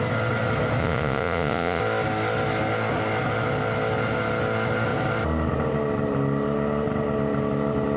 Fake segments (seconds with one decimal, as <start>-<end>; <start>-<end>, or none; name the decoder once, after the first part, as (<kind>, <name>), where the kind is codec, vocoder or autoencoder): 0.8-1.8 (vocoder, Vocos)